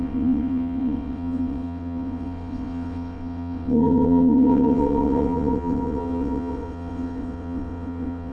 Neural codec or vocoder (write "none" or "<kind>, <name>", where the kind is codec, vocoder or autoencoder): vocoder, WaveNeXt